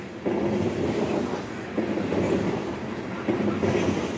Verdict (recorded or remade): recorded